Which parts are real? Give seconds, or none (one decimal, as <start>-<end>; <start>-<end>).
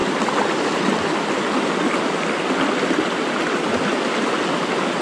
2.0-5.0